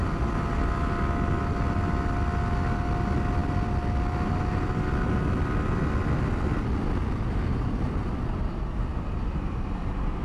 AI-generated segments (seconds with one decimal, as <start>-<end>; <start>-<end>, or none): 8.9-9.6